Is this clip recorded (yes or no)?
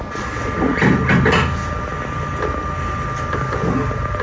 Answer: yes